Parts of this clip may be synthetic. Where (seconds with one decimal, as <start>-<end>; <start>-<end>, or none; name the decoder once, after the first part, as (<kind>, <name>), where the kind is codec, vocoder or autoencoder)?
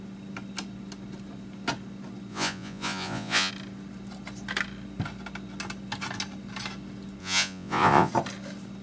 2.3-3.5 (vocoder, Vocos); 7.2-8.1